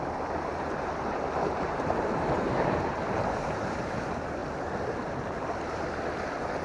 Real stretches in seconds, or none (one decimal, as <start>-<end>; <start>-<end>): 0.0-0.5; 4.0-6.6